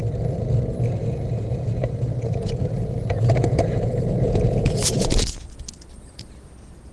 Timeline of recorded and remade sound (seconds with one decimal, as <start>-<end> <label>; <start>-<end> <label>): 0.0-1.0 recorded; 1.0-5.1 remade; 5.1-6.9 recorded